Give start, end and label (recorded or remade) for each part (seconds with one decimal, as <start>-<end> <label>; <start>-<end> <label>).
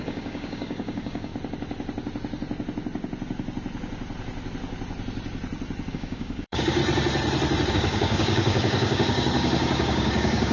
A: 0.0-1.3 remade; 1.3-5.9 recorded; 5.9-6.8 remade; 6.8-7.7 recorded; 7.7-10.5 remade